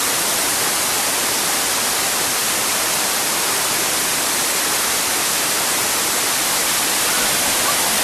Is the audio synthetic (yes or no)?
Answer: no